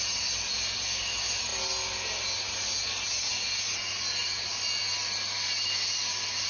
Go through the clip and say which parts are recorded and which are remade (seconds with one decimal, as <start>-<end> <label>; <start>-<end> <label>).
0.0-6.5 recorded